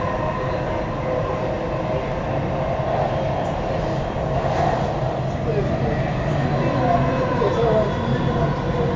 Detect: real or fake real